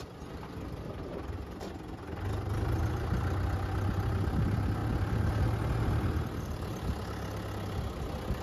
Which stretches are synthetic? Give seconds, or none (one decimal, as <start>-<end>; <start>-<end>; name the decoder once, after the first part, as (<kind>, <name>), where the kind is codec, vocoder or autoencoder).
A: none